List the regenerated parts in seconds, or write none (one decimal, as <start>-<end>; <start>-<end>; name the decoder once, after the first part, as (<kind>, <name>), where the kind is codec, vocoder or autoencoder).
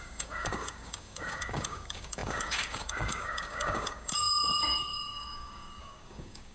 0.0-6.5 (codec, DAC)